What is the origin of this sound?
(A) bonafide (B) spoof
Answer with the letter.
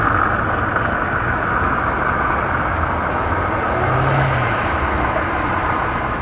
A